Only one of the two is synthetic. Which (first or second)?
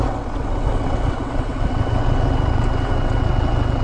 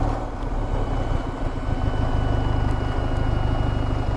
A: first